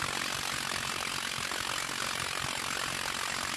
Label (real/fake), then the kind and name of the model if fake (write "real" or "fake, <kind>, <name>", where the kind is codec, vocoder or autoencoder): real